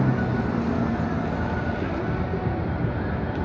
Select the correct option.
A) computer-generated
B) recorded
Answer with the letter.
B